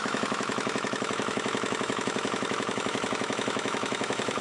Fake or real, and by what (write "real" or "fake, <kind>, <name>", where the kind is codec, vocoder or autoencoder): fake, autoencoder, DAC-VAE